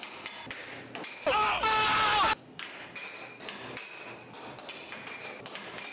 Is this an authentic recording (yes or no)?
yes